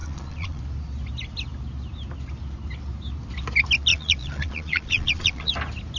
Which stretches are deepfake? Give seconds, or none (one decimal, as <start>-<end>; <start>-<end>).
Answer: 0.0-0.6; 3.9-5.5